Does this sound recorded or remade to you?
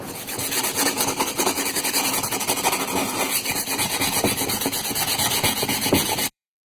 remade